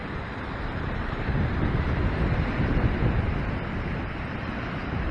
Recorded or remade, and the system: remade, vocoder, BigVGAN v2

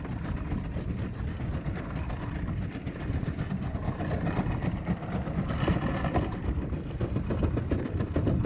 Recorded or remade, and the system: remade, vocoder, BigVGAN v2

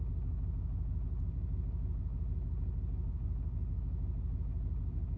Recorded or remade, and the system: recorded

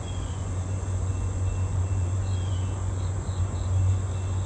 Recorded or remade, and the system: remade, vocoder, Vocos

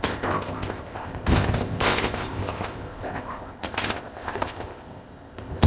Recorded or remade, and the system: remade, codec, ZipCodec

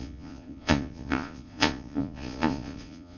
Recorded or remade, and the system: remade, vocoder, Vocos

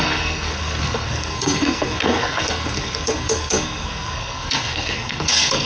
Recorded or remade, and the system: remade, codec, SNAC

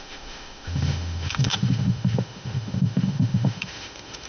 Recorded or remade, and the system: remade, autoencoder, DAC-VAE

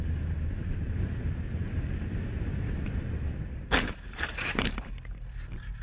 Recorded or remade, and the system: remade, vocoder, BigVGAN v2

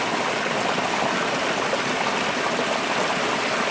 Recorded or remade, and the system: recorded